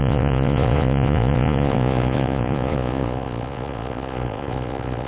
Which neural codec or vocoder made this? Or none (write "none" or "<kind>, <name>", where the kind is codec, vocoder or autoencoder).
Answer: vocoder, Vocos